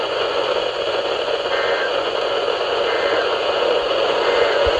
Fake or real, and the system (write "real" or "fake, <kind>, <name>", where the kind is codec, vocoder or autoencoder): fake, vocoder, Vocos